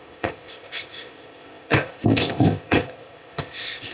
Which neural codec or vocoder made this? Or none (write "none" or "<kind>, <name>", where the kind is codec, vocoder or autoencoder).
codec, ZipCodec